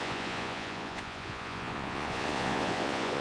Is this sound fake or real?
fake